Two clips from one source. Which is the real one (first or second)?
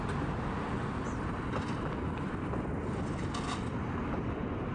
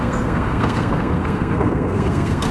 first